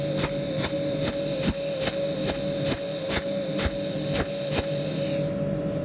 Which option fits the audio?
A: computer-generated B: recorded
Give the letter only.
B